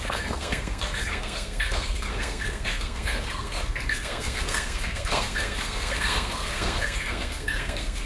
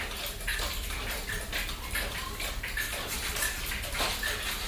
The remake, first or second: first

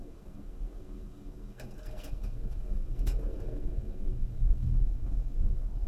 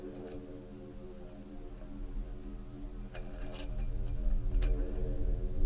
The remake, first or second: first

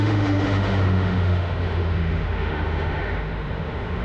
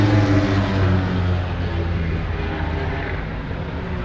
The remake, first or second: first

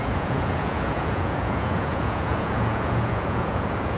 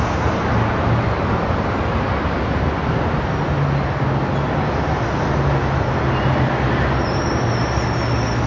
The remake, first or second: first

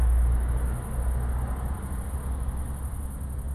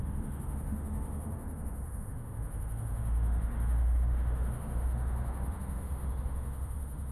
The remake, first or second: second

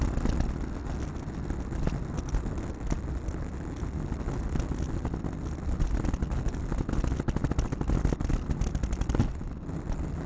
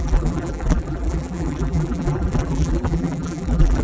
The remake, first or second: second